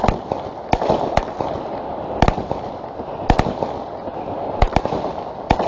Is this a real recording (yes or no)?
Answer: yes